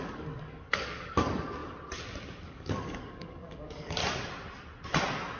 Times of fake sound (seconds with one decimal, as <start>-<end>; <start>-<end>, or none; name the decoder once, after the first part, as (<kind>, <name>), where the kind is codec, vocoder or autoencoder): 0.0-1.6 (codec, DAC); 2.4-4.0